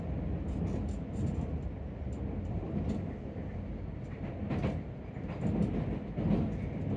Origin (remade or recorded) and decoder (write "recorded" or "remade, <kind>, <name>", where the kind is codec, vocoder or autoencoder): recorded